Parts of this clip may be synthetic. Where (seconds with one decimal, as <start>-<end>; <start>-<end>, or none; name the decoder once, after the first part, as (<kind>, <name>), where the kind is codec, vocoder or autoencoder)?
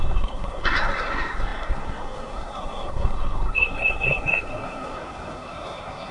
0.0-6.1 (codec, SNAC)